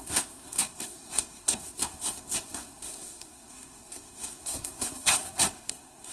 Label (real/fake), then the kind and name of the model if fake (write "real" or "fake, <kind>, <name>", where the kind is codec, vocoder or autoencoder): fake, codec, SNAC